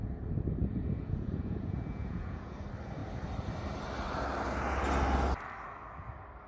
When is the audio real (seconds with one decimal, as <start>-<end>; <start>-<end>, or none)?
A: 0.0-0.6; 2.6-6.5